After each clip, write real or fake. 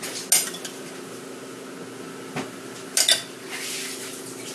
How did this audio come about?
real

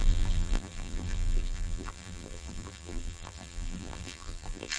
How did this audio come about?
fake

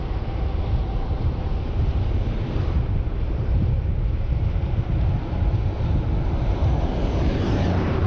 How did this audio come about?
fake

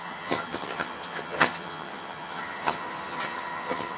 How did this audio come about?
fake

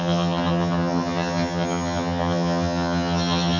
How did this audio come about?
fake